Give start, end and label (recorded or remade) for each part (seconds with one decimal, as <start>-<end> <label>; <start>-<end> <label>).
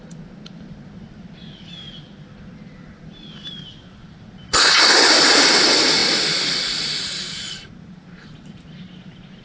0.0-9.4 recorded